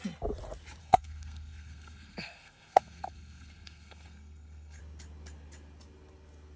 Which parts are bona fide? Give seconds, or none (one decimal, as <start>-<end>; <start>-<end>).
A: 0.0-0.8; 4.8-6.6